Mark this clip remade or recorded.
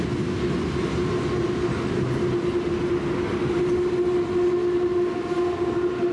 recorded